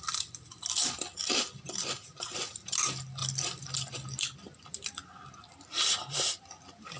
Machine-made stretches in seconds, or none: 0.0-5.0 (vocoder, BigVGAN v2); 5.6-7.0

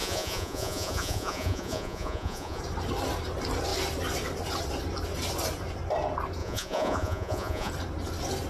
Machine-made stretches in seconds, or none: 0.0-2.6 (vocoder, Vocos); 6.4-7.7

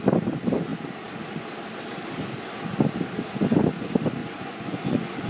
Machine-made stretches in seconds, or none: 4.2-5.3 (vocoder, Vocos)

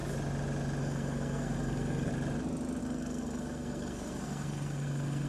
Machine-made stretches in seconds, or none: 0.8-2.1 (codec, SNAC); 2.8-5.3

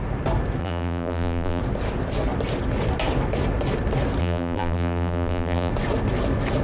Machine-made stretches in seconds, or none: 0.6-1.6 (vocoder, BigVGAN v2); 4.2-5.7

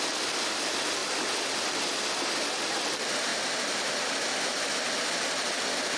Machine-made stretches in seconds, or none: 0.0-1.0 (vocoder, BigVGAN v2); 2.2-3.3; 4.5-6.0